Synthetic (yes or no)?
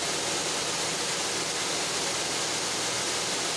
no